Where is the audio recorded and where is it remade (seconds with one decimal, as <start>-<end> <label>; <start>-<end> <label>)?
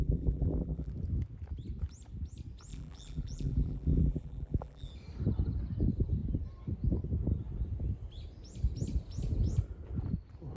0.0-0.9 remade; 0.9-2.7 recorded; 2.7-4.9 remade; 4.9-10.6 recorded